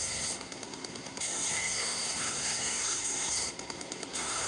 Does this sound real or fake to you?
fake